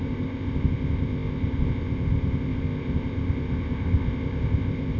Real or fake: fake